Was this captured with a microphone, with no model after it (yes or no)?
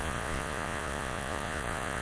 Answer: no